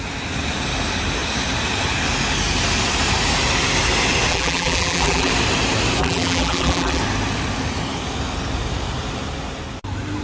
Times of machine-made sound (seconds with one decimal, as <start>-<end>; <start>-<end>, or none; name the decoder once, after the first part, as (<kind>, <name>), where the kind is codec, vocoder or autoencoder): 4.3-5.3 (vocoder, BigVGAN v2); 6.0-7.0